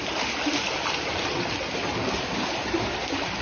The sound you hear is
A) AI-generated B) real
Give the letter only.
B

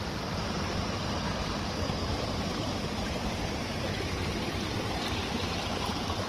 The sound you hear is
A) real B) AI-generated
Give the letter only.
B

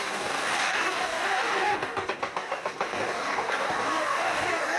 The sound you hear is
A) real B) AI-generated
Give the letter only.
B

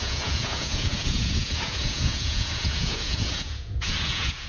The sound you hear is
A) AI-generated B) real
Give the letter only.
A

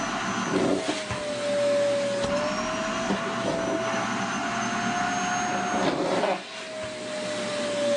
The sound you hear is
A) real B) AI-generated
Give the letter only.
A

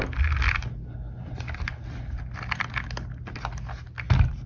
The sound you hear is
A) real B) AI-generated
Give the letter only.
A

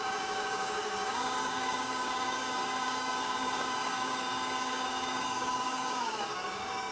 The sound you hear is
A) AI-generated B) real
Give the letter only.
A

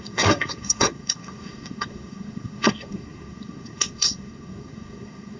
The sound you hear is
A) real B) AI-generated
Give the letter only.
B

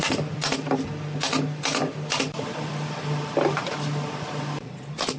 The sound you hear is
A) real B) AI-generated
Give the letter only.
A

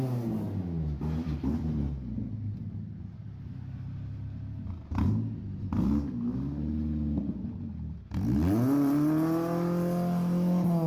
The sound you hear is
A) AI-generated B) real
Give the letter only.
B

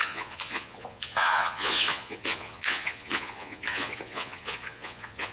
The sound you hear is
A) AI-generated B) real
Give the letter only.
A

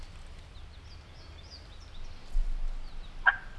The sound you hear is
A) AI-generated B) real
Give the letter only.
B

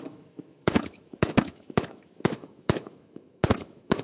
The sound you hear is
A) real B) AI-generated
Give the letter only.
B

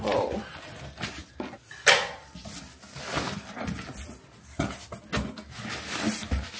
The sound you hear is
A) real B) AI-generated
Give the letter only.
A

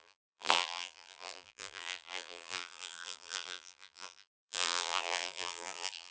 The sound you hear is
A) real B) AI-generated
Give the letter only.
B